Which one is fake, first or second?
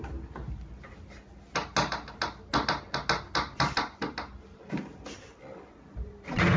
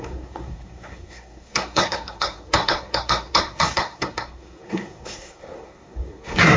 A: second